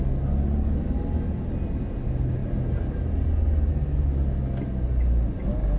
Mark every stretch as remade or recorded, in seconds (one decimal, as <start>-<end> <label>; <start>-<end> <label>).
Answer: 0.0-5.8 recorded